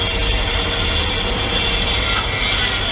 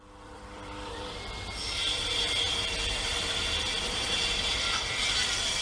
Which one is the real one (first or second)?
first